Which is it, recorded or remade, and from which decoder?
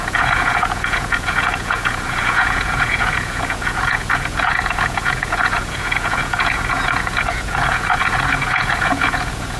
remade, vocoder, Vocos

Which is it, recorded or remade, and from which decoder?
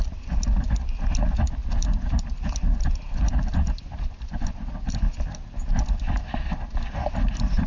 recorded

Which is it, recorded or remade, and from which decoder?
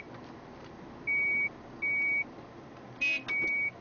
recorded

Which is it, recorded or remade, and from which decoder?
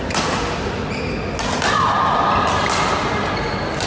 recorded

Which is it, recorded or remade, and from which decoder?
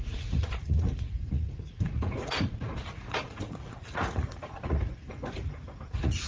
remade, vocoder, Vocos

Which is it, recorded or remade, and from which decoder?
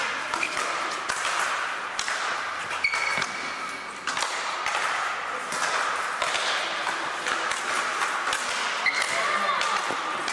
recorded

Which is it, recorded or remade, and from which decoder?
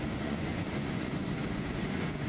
remade, vocoder, Vocos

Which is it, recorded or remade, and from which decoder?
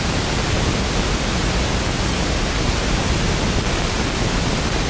recorded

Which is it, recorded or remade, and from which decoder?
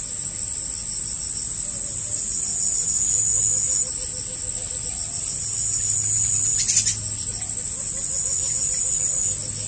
recorded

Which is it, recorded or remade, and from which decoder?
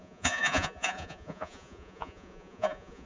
remade, vocoder, Vocos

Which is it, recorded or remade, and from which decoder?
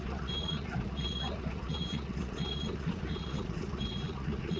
remade, vocoder, Vocos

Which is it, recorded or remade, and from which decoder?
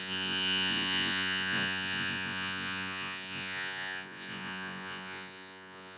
remade, vocoder, Vocos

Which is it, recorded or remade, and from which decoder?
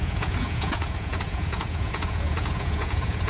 remade, vocoder, Vocos